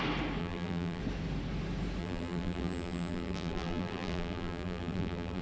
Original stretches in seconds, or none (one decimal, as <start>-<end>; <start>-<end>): 0.0-0.4; 1.0-2.0